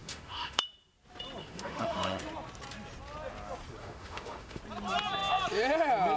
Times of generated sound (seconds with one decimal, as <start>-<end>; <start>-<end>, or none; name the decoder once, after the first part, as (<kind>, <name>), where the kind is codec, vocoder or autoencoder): 0.0-0.6 (autoencoder, DAC-VAE); 1.4-2.2; 3.8-4.6